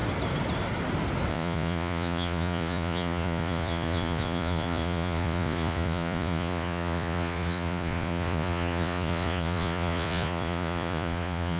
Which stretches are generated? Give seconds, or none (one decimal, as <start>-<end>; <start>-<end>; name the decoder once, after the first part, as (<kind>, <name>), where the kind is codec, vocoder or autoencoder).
1.3-11.6 (vocoder, Vocos)